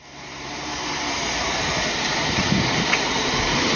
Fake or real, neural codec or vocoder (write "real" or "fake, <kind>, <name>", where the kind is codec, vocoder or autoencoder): fake, vocoder, BigVGAN v2